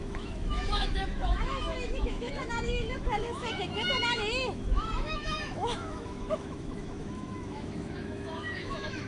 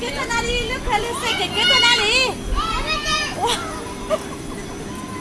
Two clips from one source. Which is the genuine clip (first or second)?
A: second